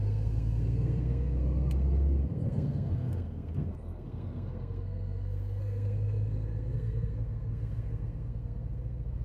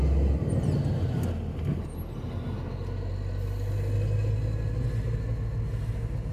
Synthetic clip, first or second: first